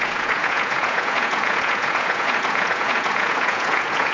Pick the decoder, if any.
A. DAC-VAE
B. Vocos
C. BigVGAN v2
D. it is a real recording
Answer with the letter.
B